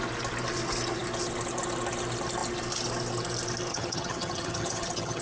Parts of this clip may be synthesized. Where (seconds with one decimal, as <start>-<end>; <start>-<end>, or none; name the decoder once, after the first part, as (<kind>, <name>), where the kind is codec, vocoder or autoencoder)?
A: 3.7-5.2 (vocoder, HiFi-GAN)